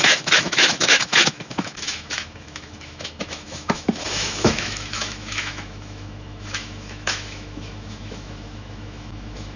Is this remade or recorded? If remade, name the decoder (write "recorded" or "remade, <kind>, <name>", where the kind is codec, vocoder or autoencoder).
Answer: remade, autoencoder, DAC-VAE